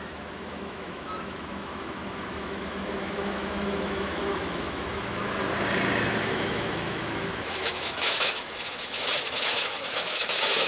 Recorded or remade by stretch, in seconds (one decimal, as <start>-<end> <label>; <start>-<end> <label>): 0.0-5.4 remade; 5.4-6.1 recorded; 6.1-10.7 remade